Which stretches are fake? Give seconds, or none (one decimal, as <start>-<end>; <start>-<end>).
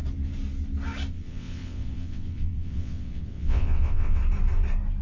1.1-4.2